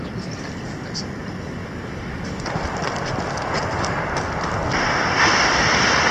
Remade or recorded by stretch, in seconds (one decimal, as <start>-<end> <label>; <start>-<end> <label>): 0.0-6.1 recorded